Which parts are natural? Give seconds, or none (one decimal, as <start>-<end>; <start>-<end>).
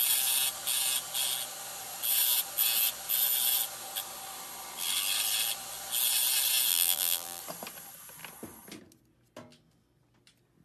0.0-6.7; 7.4-10.6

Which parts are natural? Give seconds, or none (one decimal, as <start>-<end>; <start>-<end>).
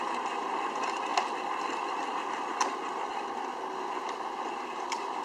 1.1-3.8